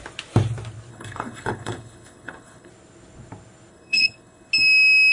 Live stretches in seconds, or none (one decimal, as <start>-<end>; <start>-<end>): 0.0-0.9; 2.7-3.7; 4.5-5.1